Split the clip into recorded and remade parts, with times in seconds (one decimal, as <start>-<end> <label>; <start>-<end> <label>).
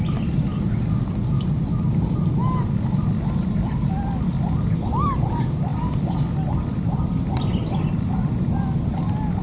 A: 0.0-9.4 recorded